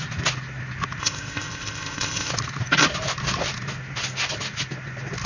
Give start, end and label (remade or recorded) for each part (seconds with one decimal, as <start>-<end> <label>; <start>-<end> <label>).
0.0-1.0 recorded; 1.0-2.3 remade; 2.3-5.3 recorded